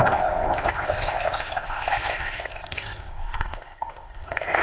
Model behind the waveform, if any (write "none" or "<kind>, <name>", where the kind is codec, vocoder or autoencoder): codec, ZipCodec